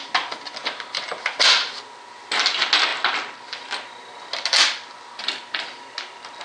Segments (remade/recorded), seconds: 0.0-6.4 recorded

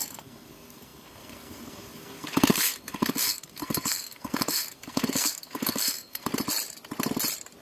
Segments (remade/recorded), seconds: 0.0-6.3 remade; 6.3-7.6 recorded

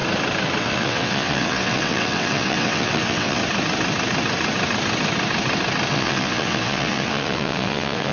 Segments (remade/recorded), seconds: 0.0-0.6 recorded; 0.6-3.4 remade; 3.4-5.9 recorded; 5.9-8.1 remade

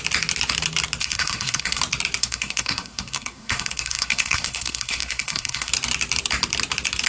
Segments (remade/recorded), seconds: 0.0-1.0 recorded; 1.0-1.8 remade; 1.8-2.2 recorded; 2.2-5.7 remade; 5.7-7.1 recorded

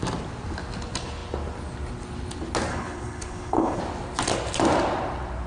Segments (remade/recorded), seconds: 0.0-2.7 recorded; 2.7-3.8 remade; 3.8-5.5 recorded

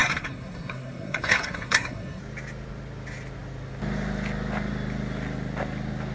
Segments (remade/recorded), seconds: 0.0-2.2 remade; 2.2-6.1 recorded

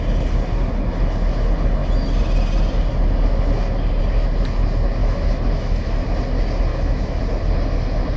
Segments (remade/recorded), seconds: 0.0-5.0 recorded; 5.0-6.0 remade; 6.0-6.7 recorded; 6.7-7.2 remade; 7.2-8.2 recorded

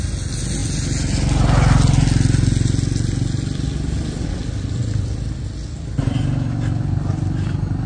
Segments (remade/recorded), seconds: 0.0-7.9 recorded